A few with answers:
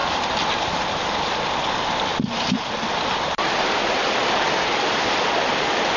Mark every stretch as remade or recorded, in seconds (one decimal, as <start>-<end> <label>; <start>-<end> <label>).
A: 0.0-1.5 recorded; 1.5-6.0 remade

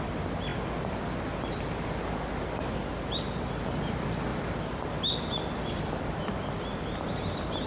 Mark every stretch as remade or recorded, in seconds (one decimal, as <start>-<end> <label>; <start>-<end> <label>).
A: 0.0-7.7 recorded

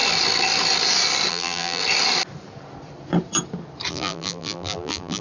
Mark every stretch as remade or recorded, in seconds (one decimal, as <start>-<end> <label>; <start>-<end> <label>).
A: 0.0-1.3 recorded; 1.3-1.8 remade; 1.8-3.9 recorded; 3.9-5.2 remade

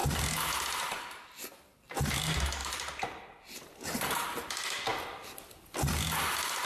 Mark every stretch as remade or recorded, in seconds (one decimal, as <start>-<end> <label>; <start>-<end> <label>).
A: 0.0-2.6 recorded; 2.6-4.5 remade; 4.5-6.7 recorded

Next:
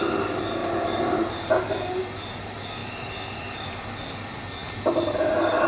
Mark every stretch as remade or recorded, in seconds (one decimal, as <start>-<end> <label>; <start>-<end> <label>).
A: 0.0-0.6 recorded; 0.6-1.5 remade; 1.5-5.7 recorded